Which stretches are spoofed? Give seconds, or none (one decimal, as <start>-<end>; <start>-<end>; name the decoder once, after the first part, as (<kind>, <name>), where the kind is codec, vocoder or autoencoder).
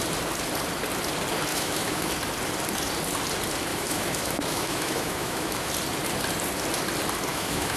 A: 1.5-2.1 (autoencoder, DAC-VAE); 3.7-5.7; 7.3-7.8